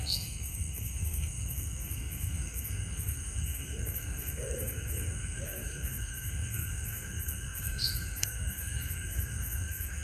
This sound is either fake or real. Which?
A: fake